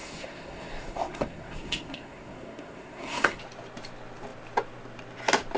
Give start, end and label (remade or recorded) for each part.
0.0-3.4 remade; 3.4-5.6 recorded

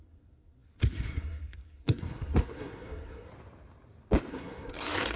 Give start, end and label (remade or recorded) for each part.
0.0-3.3 remade; 3.3-4.3 recorded; 4.3-5.2 remade